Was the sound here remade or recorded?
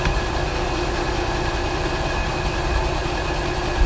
recorded